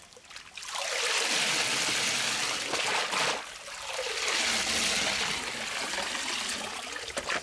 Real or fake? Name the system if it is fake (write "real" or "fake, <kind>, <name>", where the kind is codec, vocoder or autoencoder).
real